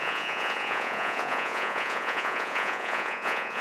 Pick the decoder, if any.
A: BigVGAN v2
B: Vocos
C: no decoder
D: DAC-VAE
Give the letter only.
B